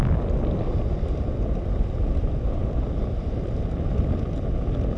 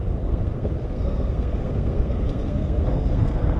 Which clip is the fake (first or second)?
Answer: second